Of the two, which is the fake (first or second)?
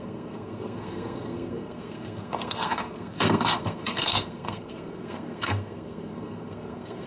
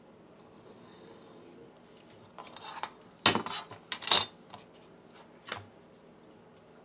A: first